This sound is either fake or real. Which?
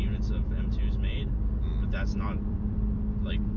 fake